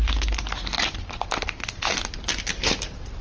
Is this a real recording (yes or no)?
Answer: yes